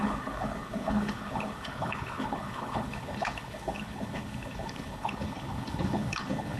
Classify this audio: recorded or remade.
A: remade